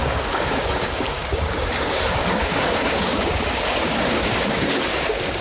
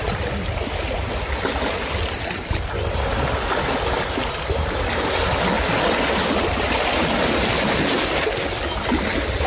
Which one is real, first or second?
second